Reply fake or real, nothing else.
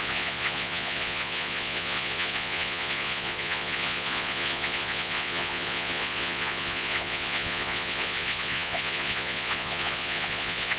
fake